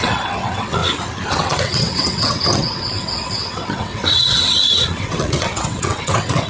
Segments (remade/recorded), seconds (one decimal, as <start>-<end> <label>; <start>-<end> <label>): 0.0-0.8 remade; 0.8-1.3 recorded; 1.3-6.5 remade